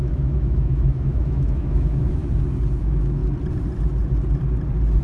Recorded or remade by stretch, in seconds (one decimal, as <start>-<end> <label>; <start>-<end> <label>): 0.0-2.2 remade; 2.2-2.8 recorded; 2.8-3.2 remade; 3.2-5.0 recorded